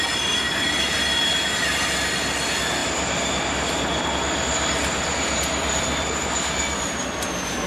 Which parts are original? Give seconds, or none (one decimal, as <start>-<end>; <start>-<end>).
0.0-2.8; 4.1-4.8; 6.6-7.7